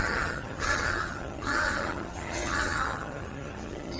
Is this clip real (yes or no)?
no